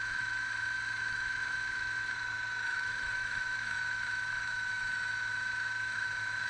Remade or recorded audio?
remade